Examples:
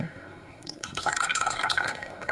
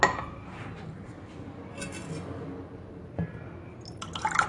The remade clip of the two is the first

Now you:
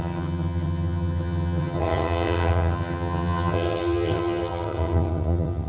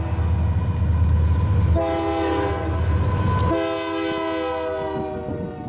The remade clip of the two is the first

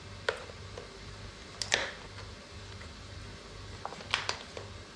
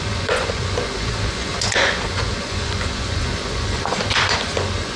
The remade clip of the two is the second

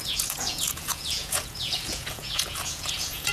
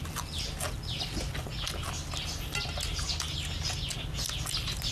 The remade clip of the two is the first